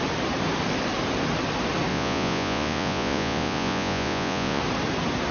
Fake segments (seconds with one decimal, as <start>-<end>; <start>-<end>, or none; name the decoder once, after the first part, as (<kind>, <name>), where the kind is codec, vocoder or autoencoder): 1.9-4.6 (vocoder, Vocos)